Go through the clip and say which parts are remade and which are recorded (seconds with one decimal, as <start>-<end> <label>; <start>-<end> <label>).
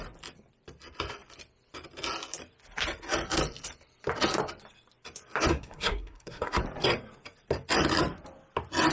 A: 0.0-5.5 recorded; 5.5-6.6 remade; 6.6-8.9 recorded